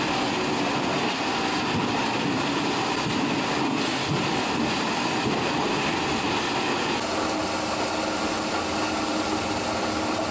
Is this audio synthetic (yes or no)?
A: no